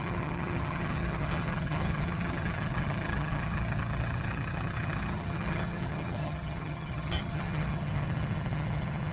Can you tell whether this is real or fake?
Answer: fake